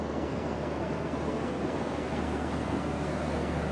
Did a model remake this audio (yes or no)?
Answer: yes